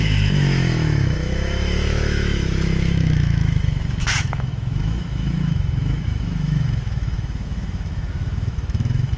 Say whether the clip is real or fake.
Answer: fake